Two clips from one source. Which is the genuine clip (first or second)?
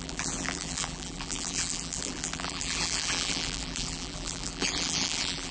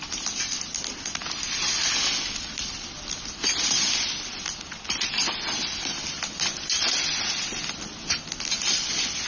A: second